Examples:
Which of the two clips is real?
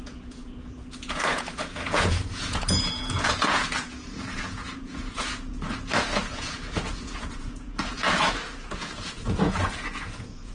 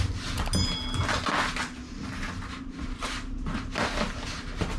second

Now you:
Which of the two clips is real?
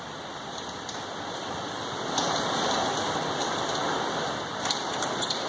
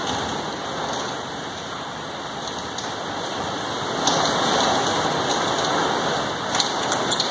second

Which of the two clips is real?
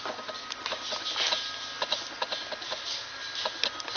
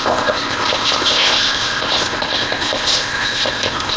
first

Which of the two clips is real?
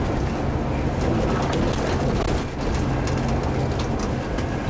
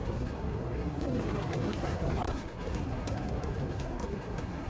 first